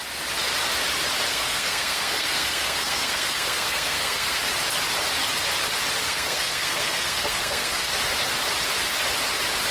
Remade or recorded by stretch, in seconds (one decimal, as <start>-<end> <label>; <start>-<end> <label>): 0.0-1.3 recorded; 1.3-4.4 remade; 4.4-6.0 recorded; 6.0-7.9 remade; 7.9-9.7 recorded